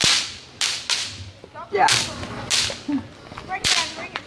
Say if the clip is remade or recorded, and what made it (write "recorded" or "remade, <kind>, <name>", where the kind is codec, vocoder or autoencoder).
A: recorded